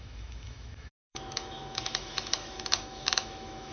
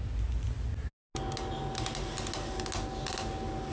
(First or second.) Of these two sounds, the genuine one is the second